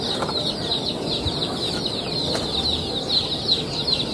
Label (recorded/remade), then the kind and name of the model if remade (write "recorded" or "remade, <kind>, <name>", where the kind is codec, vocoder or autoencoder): recorded